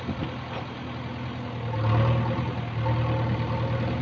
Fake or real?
real